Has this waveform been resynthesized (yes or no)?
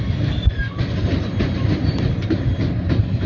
no